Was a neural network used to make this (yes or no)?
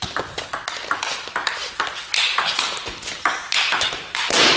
no